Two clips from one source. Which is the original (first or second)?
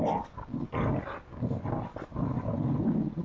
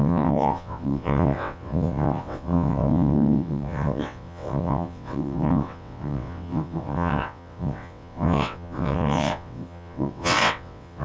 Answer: first